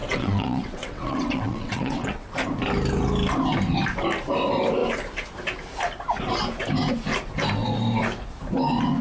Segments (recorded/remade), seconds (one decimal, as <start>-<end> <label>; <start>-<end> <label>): 0.0-2.3 remade; 2.3-9.0 recorded